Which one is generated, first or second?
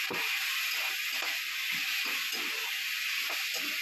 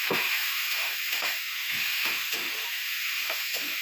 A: second